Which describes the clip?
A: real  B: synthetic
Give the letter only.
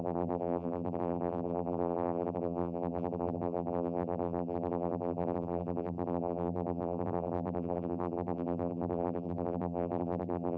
B